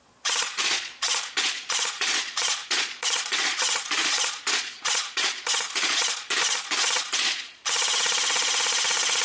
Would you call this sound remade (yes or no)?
yes